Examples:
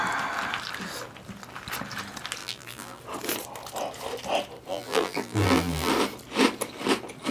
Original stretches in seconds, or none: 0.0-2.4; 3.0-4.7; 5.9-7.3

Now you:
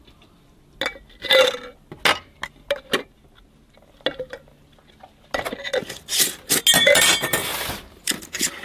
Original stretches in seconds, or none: 0.0-7.5

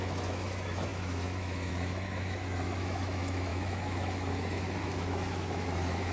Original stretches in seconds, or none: none

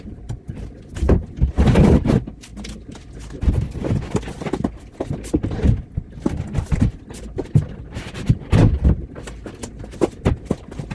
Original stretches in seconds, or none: 0.0-10.9

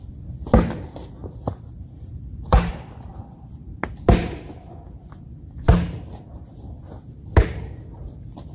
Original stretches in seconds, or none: 0.0-1.2; 2.7-8.5

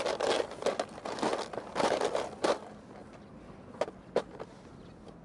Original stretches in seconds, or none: 0.0-5.2